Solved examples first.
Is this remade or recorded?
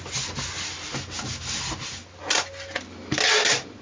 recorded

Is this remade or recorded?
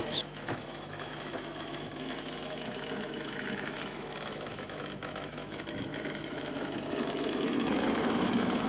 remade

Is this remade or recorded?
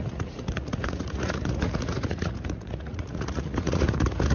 remade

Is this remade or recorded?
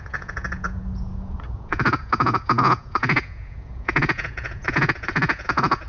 remade